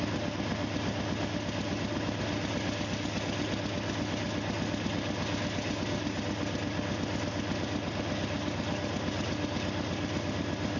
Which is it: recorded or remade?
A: recorded